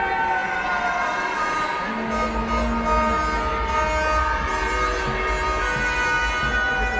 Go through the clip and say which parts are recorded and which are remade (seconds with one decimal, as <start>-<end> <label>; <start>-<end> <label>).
0.0-7.0 recorded